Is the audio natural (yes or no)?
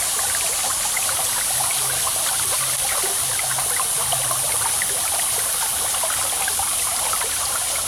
yes